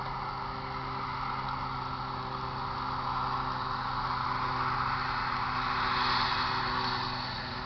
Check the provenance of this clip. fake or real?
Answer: real